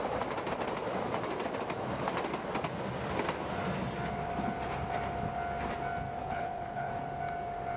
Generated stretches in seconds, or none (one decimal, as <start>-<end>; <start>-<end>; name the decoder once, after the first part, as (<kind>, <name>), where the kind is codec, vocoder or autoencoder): 6.2-6.9 (codec, HILCodec)